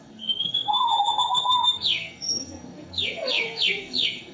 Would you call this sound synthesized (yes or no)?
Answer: yes